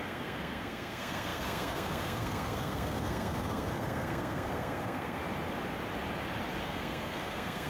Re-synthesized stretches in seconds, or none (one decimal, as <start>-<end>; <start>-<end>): 0.0-5.2; 6.6-7.7